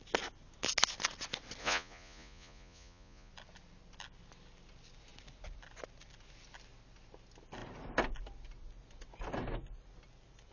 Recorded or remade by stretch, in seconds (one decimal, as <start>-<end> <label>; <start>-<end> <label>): 0.0-1.6 recorded; 1.6-3.3 remade; 3.3-10.5 recorded